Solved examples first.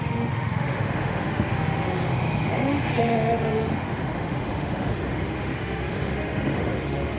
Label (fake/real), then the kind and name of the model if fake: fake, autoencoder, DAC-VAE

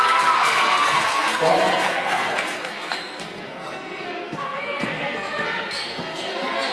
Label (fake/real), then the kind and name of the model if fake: fake, codec, SNAC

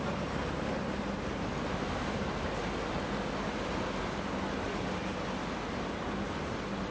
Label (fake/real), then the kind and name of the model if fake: real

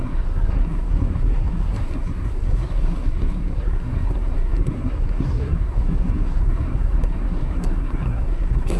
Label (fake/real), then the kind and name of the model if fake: fake, codec, SNAC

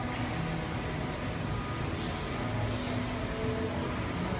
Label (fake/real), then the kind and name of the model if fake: real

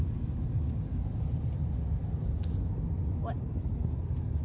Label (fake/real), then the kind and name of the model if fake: real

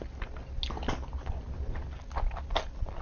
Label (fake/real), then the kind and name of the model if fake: real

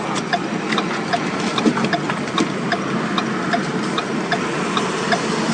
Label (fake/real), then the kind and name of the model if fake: real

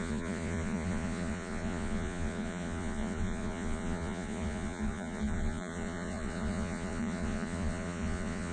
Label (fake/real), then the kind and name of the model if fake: fake, vocoder, Vocos